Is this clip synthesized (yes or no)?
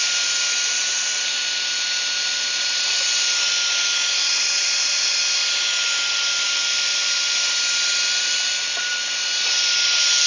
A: no